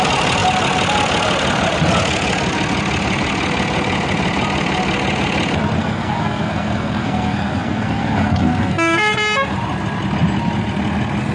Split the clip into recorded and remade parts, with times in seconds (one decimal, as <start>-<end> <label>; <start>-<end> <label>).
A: 0.0-5.8 recorded; 5.8-9.1 remade; 9.1-11.3 recorded